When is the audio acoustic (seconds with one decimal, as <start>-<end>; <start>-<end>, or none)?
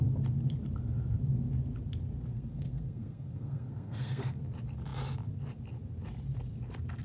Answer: 0.0-2.3; 4.4-7.0